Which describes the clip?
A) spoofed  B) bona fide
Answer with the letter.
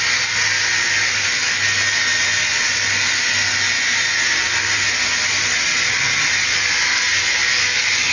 B